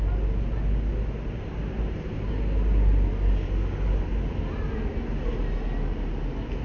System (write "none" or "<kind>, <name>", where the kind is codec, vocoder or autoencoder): none